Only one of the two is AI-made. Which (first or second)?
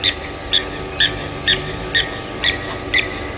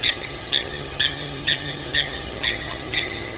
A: second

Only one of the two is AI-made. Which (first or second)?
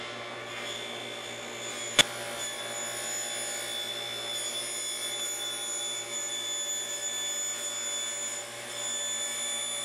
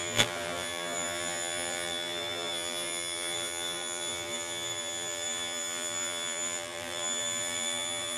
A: second